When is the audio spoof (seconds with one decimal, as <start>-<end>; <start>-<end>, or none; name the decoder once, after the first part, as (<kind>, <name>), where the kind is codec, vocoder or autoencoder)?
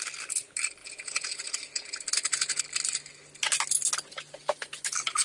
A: 0.8-2.6 (vocoder, Vocos)